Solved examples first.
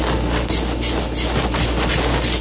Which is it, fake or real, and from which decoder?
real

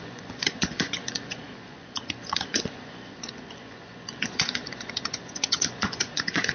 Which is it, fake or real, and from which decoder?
fake, vocoder, Vocos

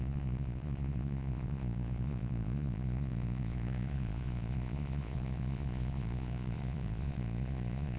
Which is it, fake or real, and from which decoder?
fake, vocoder, Vocos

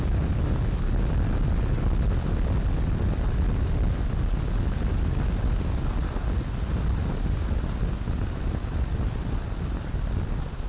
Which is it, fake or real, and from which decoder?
real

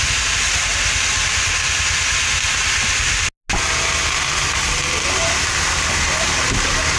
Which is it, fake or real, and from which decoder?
real